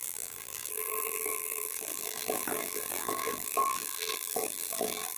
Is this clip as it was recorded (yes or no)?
no